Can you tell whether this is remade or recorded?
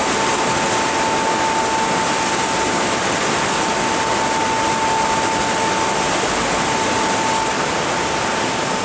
recorded